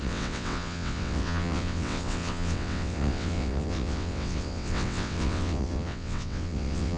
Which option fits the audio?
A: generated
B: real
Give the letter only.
A